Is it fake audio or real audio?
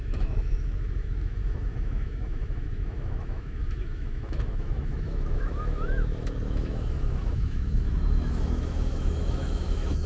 fake